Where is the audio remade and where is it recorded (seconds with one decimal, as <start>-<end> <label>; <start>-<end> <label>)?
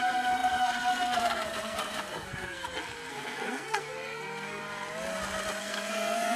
0.0-4.6 remade; 4.6-5.6 recorded; 5.6-6.4 remade